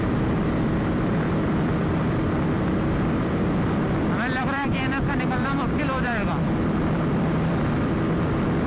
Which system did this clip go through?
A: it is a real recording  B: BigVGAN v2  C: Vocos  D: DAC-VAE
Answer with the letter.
B